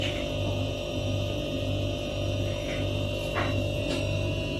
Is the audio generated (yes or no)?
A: no